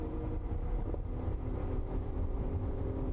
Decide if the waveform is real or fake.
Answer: fake